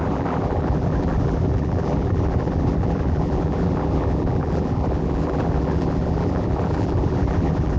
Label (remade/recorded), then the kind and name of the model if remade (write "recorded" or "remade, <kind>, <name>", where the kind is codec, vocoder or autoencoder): remade, vocoder, BigVGAN v2